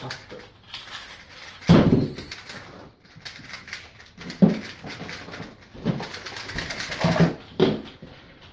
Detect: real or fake real